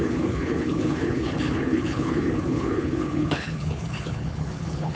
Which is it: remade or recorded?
remade